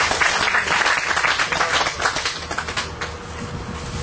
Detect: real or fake real